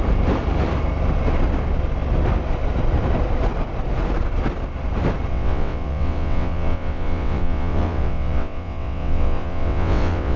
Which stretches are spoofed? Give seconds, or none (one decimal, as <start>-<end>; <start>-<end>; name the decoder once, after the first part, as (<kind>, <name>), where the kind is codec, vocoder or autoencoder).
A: 5.3-10.4 (vocoder, WaveNeXt)